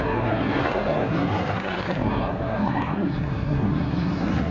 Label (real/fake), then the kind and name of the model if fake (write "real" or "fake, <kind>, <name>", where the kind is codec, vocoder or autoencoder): fake, codec, SNAC